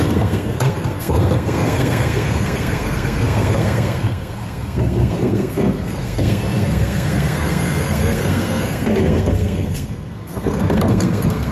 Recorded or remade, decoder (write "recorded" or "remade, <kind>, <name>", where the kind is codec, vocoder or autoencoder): remade, codec, SNAC